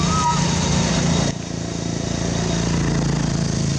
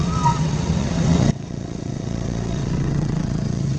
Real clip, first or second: first